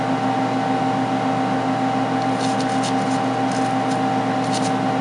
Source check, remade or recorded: recorded